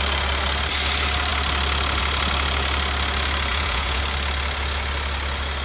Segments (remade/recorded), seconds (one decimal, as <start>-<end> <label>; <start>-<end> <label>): 0.0-3.5 recorded; 3.5-4.0 remade; 4.0-5.6 recorded